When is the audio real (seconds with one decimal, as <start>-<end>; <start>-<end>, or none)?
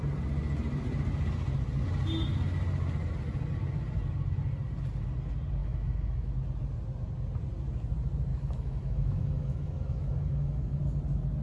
0.0-5.6; 6.3-8.3; 10.8-11.4